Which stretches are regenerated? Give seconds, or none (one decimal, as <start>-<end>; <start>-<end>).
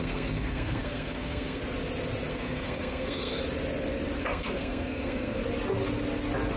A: 0.0-1.6; 2.3-3.4; 4.2-5.4